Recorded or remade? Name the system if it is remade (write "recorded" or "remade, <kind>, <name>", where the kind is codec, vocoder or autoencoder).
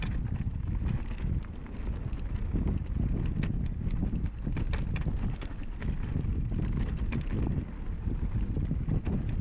recorded